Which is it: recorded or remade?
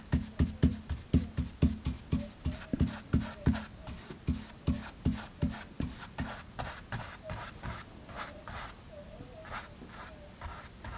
recorded